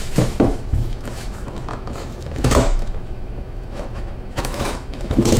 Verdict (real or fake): fake